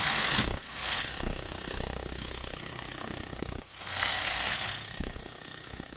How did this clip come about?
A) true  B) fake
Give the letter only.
B